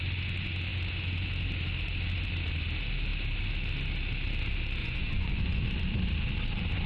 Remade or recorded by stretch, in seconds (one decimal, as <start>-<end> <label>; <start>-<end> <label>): 0.0-4.8 recorded; 4.8-5.6 remade; 5.6-6.9 recorded